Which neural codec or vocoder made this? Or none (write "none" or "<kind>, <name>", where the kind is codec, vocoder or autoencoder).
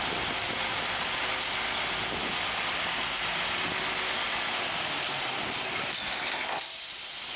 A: none